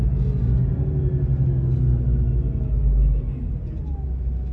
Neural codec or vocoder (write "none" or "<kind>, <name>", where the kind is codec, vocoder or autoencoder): none